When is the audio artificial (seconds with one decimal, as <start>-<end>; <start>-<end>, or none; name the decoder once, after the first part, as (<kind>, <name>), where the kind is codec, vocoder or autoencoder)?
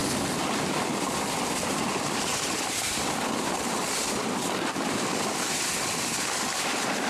none